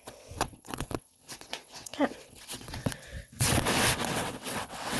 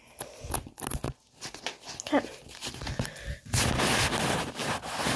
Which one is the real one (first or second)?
second